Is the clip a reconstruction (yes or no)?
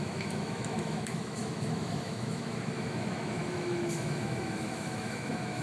yes